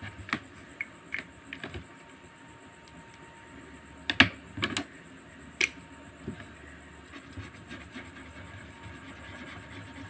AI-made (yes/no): no